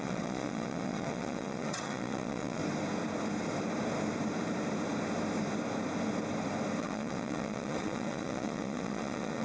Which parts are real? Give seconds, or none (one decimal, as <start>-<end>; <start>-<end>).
2.6-6.8